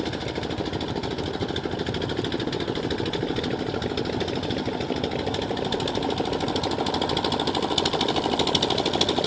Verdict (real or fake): real